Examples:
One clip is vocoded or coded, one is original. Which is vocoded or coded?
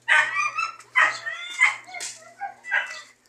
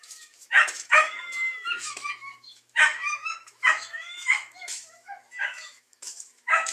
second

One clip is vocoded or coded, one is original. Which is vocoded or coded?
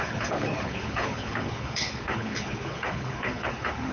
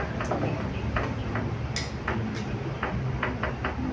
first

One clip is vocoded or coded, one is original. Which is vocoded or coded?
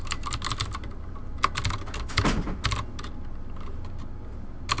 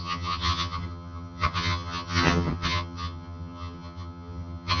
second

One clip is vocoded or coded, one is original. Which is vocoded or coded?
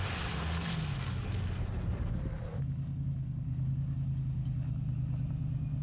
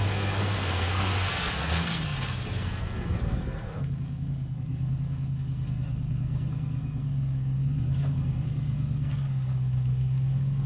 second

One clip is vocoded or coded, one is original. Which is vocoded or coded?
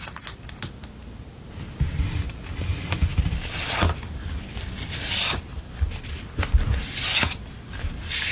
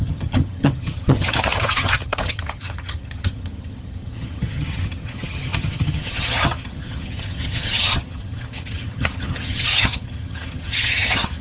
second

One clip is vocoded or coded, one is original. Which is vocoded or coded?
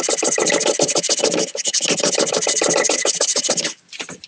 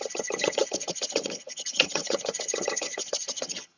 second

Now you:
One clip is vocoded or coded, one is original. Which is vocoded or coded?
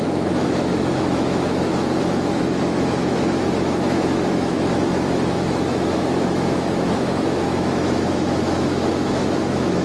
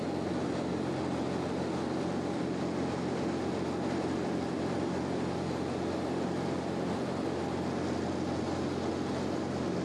first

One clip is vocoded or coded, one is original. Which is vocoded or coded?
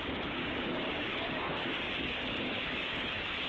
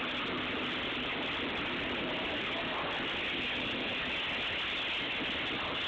first